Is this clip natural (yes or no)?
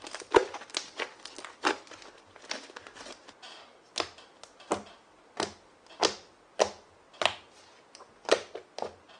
yes